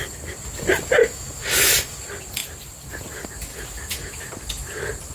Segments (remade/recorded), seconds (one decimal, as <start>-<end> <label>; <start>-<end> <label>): 0.0-1.0 recorded; 1.0-2.0 remade; 2.0-3.5 recorded; 3.5-4.2 remade; 4.2-5.1 recorded